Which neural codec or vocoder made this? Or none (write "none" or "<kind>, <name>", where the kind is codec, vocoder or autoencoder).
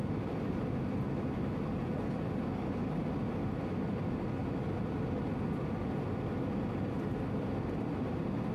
none